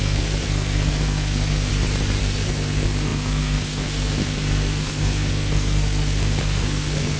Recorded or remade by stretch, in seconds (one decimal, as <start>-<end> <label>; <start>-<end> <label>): 0.0-1.7 remade; 1.7-2.2 recorded; 2.2-7.2 remade

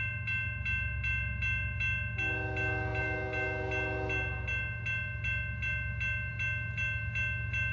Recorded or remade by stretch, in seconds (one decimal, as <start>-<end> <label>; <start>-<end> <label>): 0.0-7.7 recorded